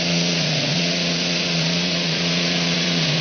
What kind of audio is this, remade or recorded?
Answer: remade